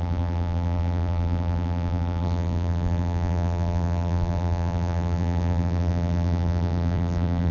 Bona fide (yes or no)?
no